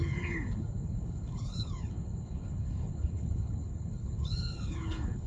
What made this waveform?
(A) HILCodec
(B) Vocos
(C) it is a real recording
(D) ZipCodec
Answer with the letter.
A